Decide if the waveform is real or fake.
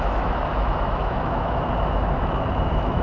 fake